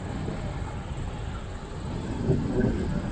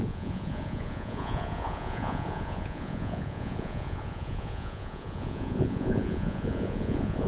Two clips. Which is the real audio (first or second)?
first